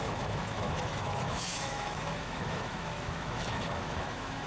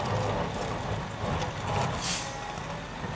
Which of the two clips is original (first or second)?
second